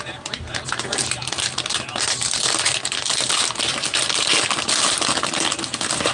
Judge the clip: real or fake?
real